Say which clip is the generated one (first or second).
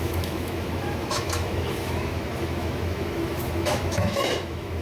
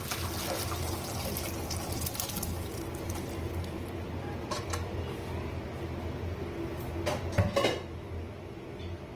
first